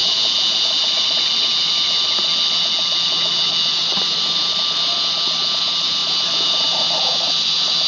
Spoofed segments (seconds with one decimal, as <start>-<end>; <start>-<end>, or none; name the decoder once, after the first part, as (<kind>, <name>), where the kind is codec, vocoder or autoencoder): 0.0-0.7 (vocoder, Vocos)